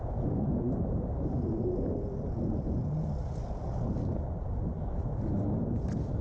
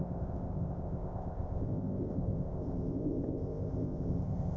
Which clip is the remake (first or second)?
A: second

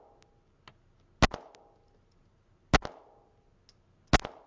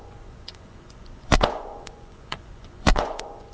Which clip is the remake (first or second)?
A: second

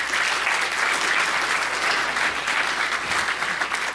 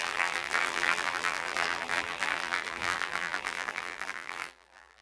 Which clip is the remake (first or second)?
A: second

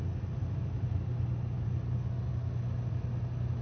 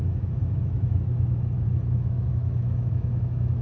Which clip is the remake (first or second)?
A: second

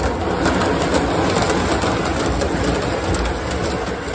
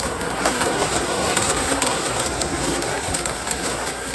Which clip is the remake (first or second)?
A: second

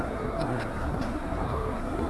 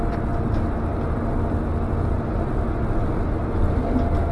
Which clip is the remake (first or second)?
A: first